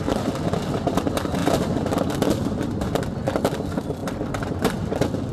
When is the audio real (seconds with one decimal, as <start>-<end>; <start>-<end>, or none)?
0.0-5.3